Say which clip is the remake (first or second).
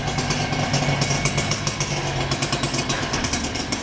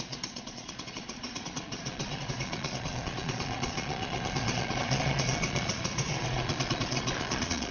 second